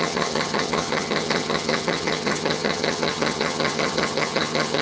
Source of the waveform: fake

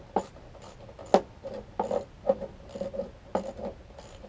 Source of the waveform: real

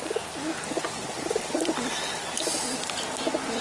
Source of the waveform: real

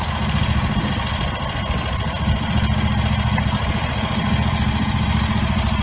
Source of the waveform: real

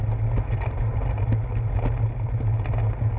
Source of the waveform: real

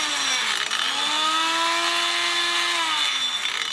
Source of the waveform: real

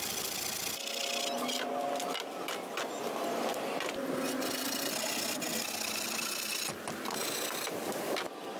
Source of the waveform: real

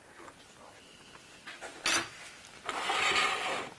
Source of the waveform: real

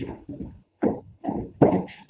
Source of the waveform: fake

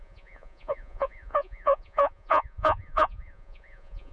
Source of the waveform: fake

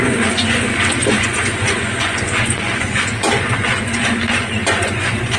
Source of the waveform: fake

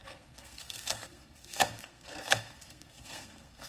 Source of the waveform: fake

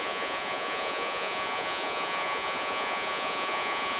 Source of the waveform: fake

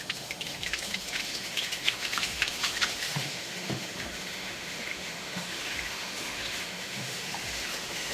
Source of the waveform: fake